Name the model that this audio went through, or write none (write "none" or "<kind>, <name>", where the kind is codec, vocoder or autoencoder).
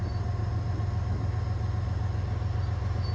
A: none